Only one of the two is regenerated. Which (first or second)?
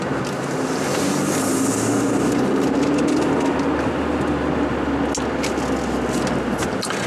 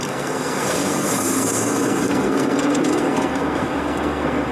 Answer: second